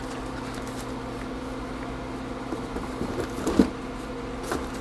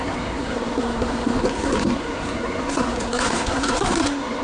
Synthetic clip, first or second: second